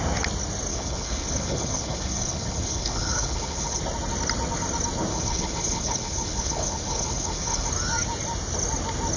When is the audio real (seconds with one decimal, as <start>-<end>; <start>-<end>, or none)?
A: 0.0-0.7; 3.8-5.1; 7.7-9.2